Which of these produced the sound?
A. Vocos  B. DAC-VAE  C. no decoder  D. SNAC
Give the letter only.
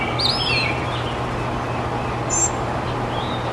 C